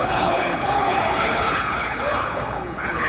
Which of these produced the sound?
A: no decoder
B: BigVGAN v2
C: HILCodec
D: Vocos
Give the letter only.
C